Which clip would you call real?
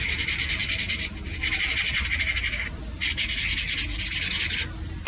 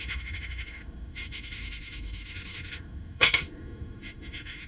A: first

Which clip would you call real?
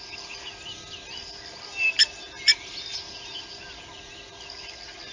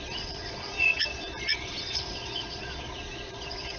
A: first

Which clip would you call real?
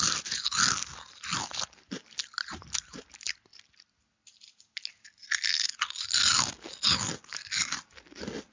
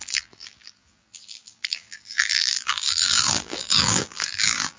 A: first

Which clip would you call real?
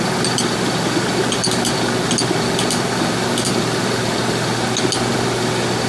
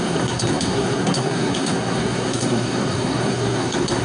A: first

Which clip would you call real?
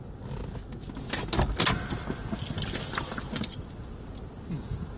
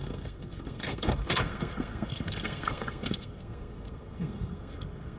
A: first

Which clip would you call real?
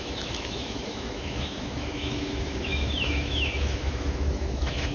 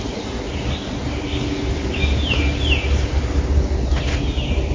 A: second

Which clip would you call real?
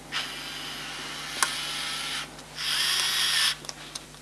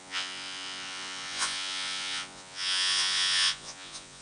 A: first